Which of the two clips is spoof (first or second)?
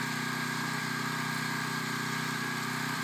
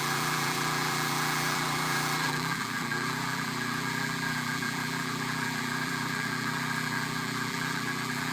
second